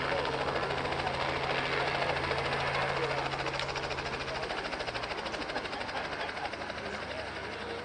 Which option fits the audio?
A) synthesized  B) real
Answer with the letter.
B